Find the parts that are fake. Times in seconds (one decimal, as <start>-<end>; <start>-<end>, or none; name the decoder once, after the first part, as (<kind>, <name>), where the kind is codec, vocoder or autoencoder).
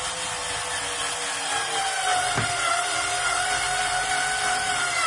none